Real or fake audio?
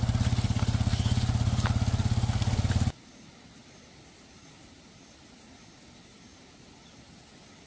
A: real